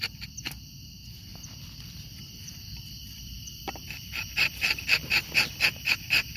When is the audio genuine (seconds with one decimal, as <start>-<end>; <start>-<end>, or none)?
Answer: 0.0-1.3; 5.1-6.4